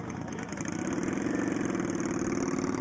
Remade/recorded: recorded